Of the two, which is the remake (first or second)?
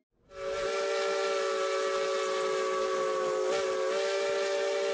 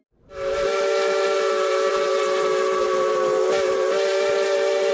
second